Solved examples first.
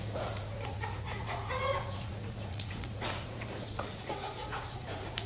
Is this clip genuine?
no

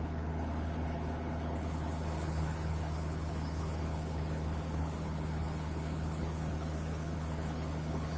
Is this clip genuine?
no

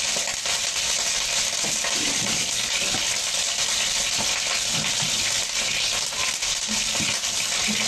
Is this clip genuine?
yes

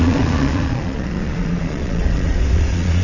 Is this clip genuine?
no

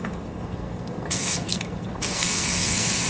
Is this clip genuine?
no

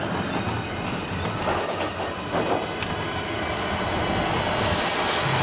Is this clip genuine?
yes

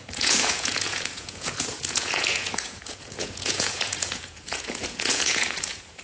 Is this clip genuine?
no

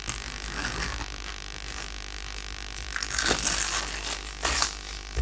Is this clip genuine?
yes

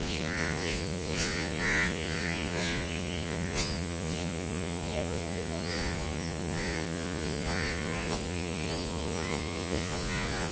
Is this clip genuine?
no